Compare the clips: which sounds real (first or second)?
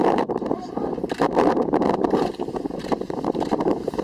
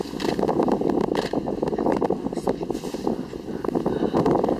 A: second